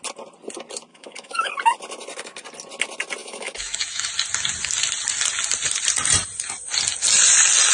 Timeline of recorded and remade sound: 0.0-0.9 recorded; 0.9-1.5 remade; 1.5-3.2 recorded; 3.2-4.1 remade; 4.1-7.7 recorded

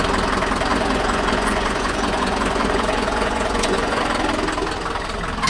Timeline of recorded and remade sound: 0.0-0.7 recorded; 0.7-4.0 remade; 4.0-5.5 recorded

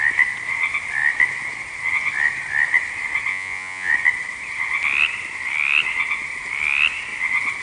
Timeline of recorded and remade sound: 0.0-3.3 recorded; 3.3-3.9 remade; 3.9-7.6 recorded